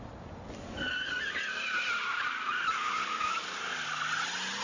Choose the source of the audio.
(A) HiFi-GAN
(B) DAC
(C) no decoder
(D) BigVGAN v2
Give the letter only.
C